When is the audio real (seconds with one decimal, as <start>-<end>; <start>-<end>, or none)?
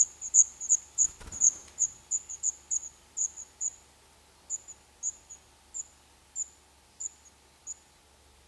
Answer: 0.0-8.5